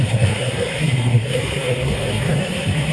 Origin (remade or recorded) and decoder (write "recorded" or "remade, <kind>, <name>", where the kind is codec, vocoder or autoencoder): remade, codec, SNAC